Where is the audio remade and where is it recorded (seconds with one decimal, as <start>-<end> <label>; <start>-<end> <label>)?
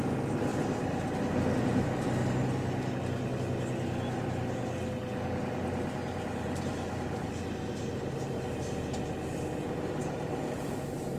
0.0-11.2 recorded